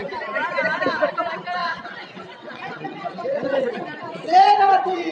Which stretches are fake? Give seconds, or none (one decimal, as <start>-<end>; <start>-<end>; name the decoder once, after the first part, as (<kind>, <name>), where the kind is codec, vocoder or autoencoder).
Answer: 1.6-5.1 (vocoder, WaveNeXt)